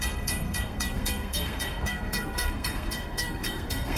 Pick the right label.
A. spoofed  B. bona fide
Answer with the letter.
A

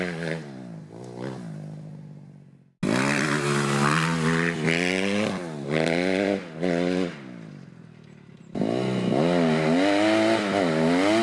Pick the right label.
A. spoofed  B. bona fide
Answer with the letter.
B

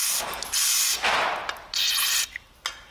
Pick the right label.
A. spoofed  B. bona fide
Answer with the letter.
B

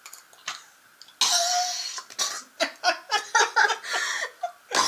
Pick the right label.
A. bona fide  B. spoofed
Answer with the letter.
A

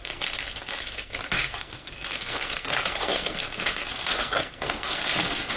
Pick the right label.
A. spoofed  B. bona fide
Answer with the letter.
A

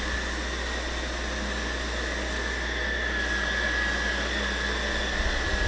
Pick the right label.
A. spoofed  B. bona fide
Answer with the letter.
B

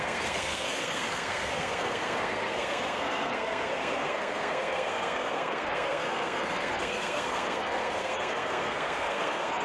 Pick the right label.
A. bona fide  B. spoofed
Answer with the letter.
B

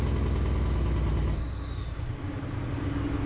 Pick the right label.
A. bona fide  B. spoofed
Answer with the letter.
A